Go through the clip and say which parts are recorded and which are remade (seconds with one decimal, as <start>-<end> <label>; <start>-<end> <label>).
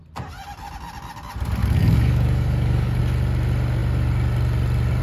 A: 0.0-1.6 recorded; 1.6-3.0 remade; 3.0-5.0 recorded